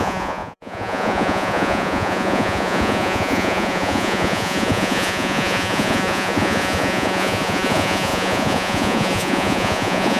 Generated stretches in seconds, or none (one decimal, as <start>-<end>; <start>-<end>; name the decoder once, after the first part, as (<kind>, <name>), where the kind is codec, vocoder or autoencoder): 0.0-10.2 (vocoder, Vocos)

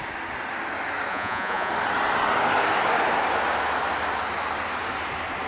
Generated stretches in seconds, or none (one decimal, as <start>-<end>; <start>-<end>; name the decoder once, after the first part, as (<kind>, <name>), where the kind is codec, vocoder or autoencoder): 1.1-1.7 (vocoder, Vocos)